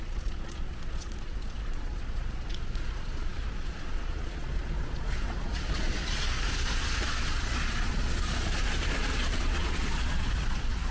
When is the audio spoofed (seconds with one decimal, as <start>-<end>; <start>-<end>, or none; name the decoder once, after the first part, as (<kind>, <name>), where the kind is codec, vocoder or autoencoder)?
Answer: 0.0-10.9 (vocoder, Vocos)